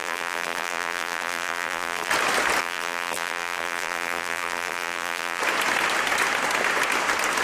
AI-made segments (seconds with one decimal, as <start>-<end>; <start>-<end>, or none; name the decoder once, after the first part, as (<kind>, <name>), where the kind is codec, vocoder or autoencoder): 0.0-2.1 (vocoder, BigVGAN v2); 2.6-5.4